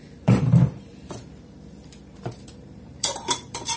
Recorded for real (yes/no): no